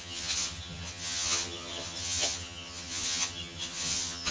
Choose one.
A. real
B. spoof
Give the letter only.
B